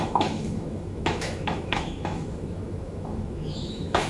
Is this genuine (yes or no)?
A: no